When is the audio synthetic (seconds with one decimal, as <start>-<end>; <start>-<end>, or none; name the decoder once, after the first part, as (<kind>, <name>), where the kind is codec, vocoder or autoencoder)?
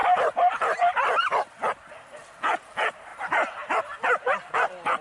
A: none